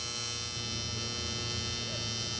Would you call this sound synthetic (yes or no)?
no